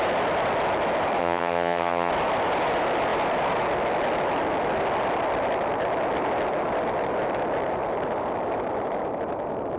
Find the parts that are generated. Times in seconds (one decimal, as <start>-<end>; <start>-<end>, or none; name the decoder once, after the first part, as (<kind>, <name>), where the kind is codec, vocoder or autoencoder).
1.2-2.1 (vocoder, HiFi-GAN)